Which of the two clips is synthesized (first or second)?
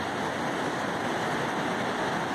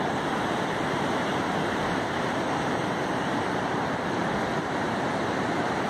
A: second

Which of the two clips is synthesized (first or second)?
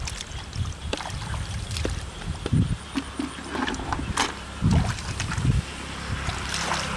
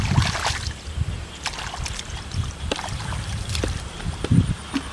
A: second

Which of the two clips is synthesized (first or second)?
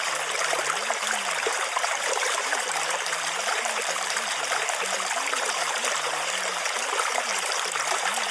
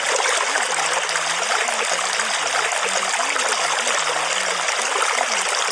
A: first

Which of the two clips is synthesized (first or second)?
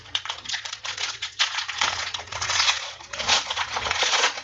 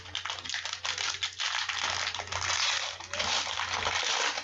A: first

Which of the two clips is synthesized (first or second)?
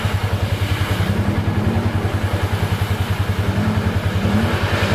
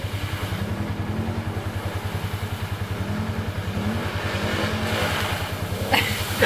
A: first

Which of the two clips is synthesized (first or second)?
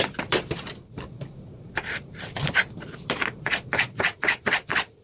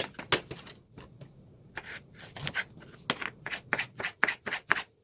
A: first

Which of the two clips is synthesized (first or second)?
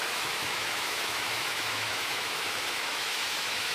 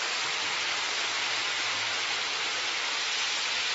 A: first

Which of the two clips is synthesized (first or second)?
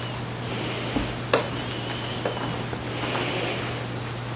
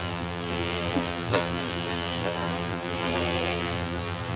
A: second